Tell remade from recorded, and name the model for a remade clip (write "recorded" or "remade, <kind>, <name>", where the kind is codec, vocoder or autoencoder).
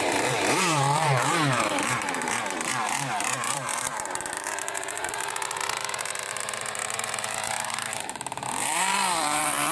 remade, vocoder, BigVGAN v2